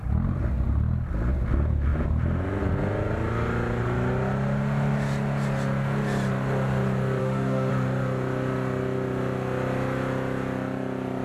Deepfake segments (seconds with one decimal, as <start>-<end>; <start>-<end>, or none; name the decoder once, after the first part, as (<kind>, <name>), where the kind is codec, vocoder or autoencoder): 7.2-7.7 (autoencoder, DAC-VAE)